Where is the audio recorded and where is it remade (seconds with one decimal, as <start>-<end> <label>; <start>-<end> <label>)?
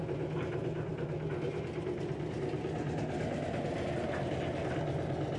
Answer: 0.0-5.4 recorded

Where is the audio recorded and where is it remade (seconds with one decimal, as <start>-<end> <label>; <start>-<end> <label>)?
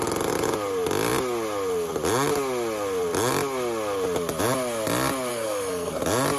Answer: 0.0-5.3 recorded; 5.3-6.0 remade; 6.0-6.4 recorded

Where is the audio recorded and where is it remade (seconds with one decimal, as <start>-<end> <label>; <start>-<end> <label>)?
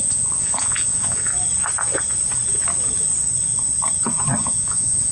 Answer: 0.0-1.3 remade; 1.3-4.4 recorded; 4.4-5.1 remade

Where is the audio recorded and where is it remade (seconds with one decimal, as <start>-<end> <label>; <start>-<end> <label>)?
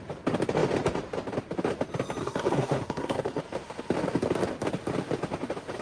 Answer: 0.0-2.2 recorded; 2.2-3.4 remade; 3.4-5.8 recorded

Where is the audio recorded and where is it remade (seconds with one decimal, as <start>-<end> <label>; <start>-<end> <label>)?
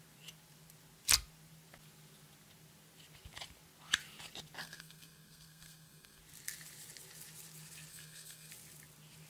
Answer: 0.0-4.6 recorded; 4.6-6.2 remade; 6.2-7.9 recorded; 7.9-8.5 remade; 8.5-9.3 recorded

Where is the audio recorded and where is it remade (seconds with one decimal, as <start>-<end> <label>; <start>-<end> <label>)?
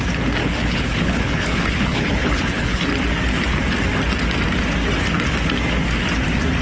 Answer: 0.0-0.4 recorded; 0.4-2.8 remade; 2.8-6.6 recorded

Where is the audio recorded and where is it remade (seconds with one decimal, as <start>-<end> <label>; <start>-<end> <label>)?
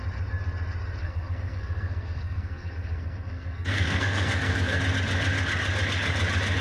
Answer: 0.0-1.0 recorded; 1.0-4.8 remade; 4.8-6.6 recorded